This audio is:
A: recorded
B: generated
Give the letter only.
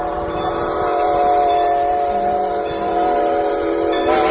B